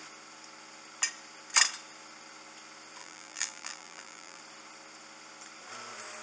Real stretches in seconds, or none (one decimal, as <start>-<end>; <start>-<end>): 0.0-3.0; 4.4-6.2